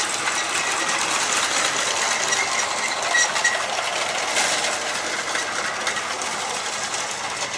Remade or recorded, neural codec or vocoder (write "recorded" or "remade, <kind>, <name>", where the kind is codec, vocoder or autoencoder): recorded